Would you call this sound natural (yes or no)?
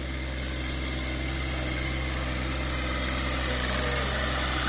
yes